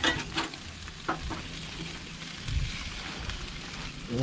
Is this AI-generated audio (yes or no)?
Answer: no